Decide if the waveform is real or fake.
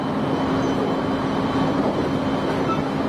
real